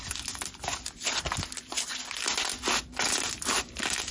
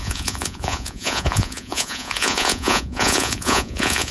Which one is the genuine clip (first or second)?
first